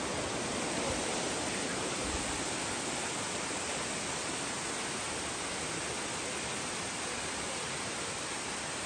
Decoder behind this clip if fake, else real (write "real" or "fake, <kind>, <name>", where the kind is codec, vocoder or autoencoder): real